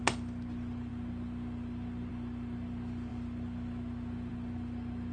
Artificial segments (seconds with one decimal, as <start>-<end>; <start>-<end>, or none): none